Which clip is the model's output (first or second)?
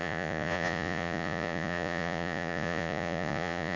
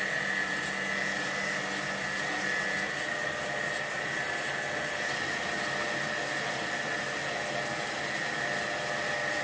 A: first